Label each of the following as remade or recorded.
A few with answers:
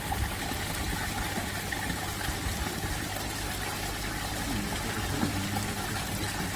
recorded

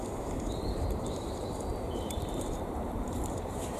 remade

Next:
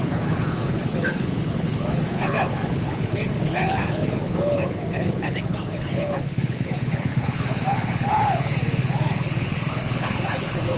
remade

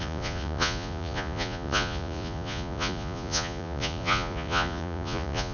remade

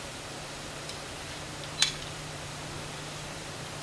remade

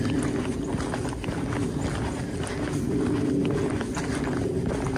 recorded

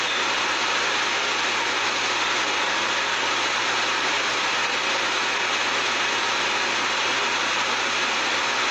recorded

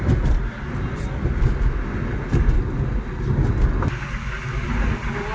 recorded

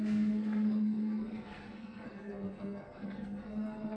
remade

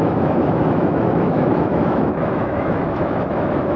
remade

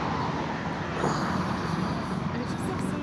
recorded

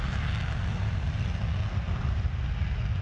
recorded